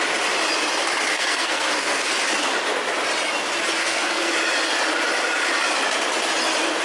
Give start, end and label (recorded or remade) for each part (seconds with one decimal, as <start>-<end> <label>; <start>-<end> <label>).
0.0-1.1 recorded; 1.1-2.1 remade; 2.1-3.8 recorded; 3.8-4.3 remade; 4.3-6.8 recorded